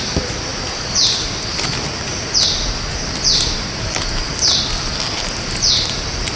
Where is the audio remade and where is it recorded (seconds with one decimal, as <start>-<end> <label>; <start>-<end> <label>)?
0.0-6.4 recorded

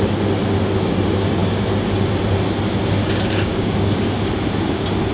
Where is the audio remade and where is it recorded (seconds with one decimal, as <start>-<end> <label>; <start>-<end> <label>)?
0.0-3.0 recorded; 3.0-4.2 remade; 4.2-5.1 recorded

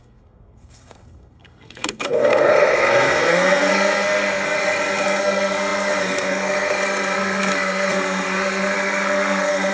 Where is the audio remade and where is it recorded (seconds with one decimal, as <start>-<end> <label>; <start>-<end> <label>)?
0.0-4.6 remade; 4.6-5.2 recorded; 5.2-9.7 remade

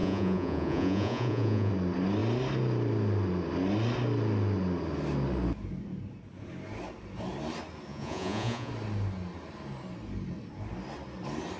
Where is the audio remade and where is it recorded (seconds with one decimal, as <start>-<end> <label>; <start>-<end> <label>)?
0.0-1.7 remade; 1.7-7.9 recorded; 7.9-8.7 remade; 8.7-11.6 recorded

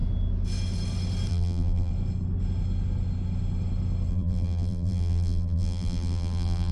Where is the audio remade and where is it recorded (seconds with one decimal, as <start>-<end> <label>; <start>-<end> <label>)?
0.0-1.3 recorded; 1.3-1.9 remade; 1.9-4.1 recorded; 4.1-6.7 remade

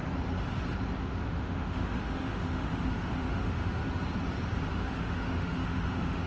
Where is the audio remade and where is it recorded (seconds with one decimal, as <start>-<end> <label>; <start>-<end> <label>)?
0.0-1.0 recorded; 1.0-3.8 remade; 3.8-4.7 recorded; 4.7-6.3 remade

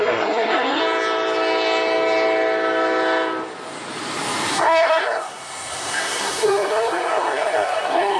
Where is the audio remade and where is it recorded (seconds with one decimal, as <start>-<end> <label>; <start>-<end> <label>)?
0.0-0.8 remade; 0.8-4.5 recorded; 4.5-8.2 remade

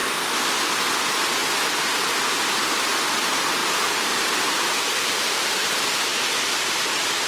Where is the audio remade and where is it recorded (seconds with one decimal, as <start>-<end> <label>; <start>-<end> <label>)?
0.0-3.6 recorded; 3.6-7.3 remade